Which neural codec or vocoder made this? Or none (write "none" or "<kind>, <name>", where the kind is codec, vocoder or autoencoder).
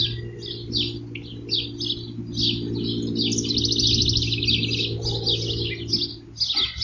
none